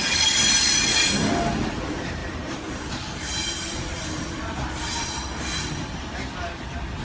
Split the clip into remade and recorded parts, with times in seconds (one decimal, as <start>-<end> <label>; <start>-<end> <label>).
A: 0.0-7.0 recorded